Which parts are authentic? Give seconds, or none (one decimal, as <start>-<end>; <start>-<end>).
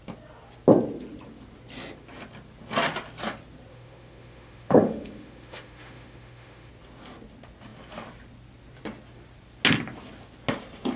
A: 0.0-3.7; 6.7-11.0